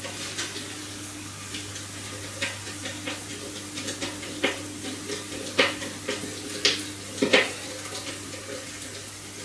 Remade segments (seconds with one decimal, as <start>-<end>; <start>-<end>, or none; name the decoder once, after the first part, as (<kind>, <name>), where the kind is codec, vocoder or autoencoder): 0.8-1.7 (codec, DAC)